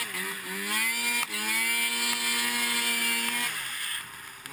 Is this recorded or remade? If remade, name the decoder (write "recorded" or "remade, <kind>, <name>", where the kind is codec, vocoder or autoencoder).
recorded